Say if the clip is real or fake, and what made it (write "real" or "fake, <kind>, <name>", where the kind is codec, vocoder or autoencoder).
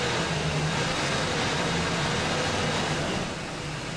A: real